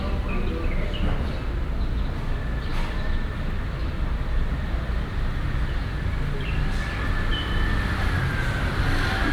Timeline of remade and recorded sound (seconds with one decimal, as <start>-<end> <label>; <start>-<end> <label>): 0.0-7.3 recorded; 7.3-8.8 remade; 8.8-9.3 recorded